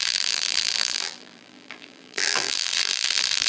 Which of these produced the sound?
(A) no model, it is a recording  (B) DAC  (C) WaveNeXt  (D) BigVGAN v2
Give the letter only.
D